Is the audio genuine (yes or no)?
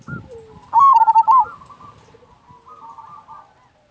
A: yes